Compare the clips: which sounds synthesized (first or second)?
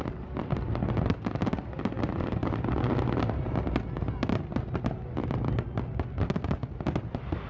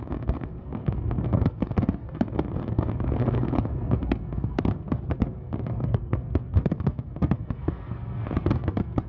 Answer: second